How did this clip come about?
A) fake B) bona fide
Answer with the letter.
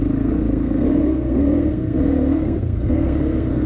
A